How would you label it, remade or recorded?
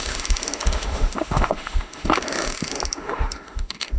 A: remade